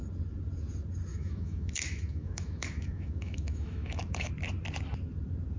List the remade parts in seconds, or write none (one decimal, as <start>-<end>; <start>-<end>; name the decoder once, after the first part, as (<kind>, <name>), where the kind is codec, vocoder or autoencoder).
1.1-4.3 (autoencoder, DAC-VAE)